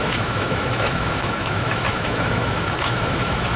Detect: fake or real fake